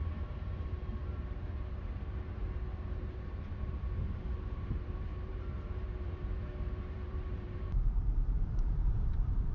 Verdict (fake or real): fake